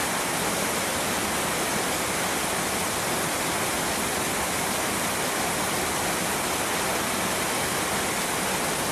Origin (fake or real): real